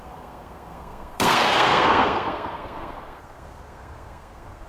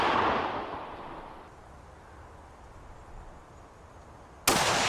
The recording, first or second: second